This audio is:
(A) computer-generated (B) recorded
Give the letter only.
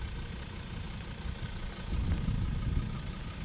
B